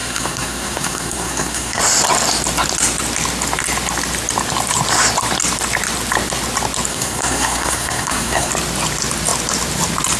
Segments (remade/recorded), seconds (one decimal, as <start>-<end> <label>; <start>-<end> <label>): 0.0-1.8 remade; 1.8-6.9 recorded; 6.9-8.5 remade; 8.5-10.2 recorded